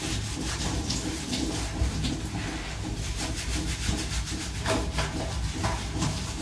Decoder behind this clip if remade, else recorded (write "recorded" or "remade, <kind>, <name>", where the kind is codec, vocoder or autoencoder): recorded